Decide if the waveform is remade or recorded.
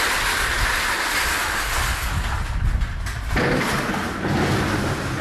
recorded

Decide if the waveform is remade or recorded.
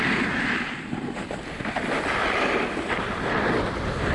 recorded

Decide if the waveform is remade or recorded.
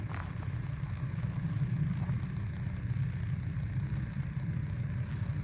recorded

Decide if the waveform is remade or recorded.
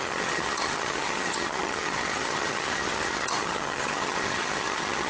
remade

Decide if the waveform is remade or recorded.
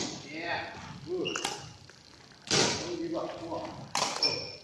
recorded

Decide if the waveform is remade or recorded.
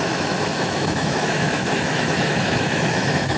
remade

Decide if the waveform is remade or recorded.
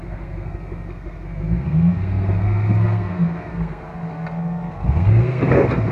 remade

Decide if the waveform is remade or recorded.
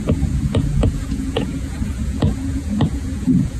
remade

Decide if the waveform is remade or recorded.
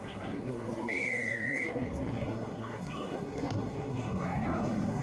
remade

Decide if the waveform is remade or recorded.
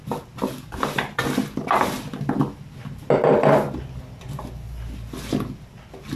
recorded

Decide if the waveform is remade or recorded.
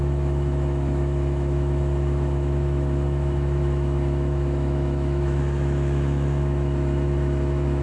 remade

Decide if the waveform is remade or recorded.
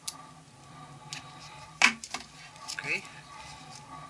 recorded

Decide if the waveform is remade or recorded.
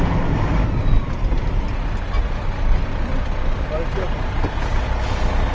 recorded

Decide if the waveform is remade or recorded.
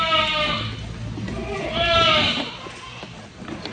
recorded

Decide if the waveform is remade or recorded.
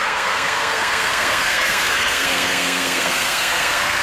remade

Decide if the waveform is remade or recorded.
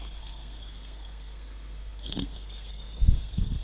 remade